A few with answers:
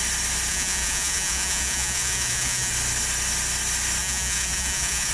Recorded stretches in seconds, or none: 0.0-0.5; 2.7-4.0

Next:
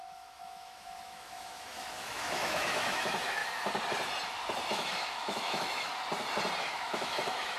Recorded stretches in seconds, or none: 3.4-4.7; 5.9-6.6

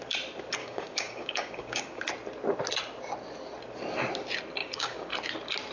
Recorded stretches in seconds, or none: 0.0-0.6; 2.0-4.6; 5.1-5.7

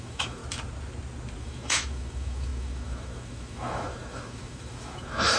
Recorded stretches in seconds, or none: 0.4-1.4

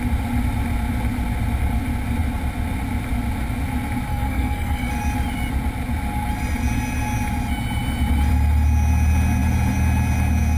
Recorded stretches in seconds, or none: 0.0-4.1; 4.9-10.6